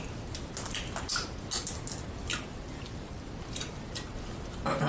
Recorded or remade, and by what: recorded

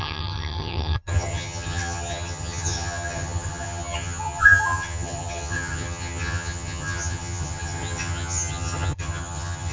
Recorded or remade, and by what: remade, vocoder, HiFi-GAN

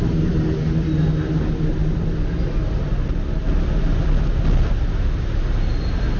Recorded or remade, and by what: recorded